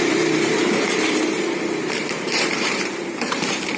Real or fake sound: fake